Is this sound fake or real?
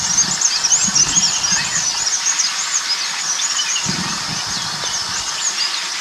real